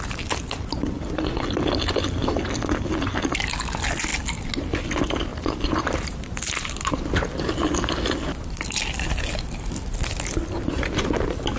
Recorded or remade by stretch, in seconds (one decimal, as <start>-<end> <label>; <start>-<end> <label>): 0.0-5.3 recorded; 5.3-7.0 remade; 7.0-11.6 recorded